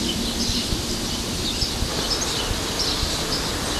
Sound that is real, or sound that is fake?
real